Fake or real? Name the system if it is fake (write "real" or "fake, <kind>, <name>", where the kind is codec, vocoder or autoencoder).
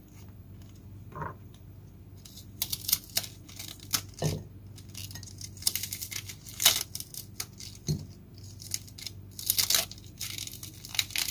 real